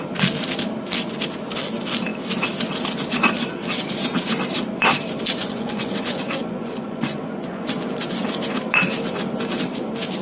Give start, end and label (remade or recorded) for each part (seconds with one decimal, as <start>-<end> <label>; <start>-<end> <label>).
0.0-5.4 recorded; 5.4-7.9 remade; 7.9-10.2 recorded